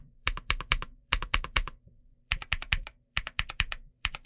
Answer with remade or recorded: remade